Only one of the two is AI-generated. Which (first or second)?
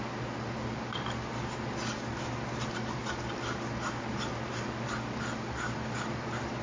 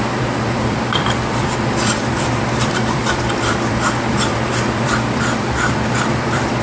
second